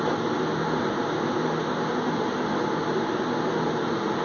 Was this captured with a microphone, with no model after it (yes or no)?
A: yes